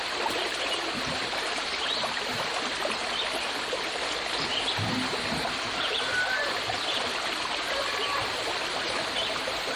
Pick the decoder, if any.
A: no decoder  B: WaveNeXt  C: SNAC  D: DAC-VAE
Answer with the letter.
A